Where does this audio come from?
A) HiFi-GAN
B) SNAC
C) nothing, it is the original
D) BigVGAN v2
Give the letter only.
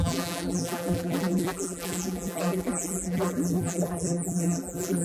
D